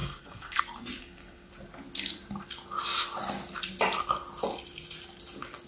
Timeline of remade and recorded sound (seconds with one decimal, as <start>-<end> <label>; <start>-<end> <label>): 0.0-0.6 remade; 0.6-1.0 recorded; 1.0-1.5 remade; 1.5-5.7 recorded